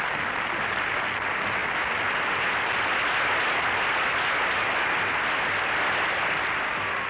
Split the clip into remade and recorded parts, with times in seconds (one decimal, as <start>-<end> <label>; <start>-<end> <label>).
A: 0.0-7.1 recorded